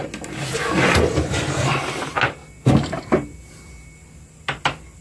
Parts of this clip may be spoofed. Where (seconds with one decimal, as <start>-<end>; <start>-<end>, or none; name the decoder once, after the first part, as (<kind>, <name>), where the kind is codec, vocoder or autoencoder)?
none